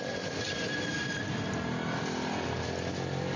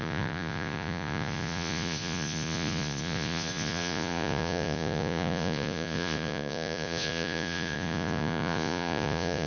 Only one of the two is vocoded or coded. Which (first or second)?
second